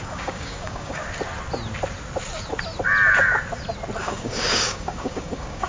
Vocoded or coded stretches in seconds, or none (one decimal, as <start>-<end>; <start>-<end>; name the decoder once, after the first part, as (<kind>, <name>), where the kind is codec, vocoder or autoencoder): 0.0-1.0 (codec, DAC); 4.0-5.7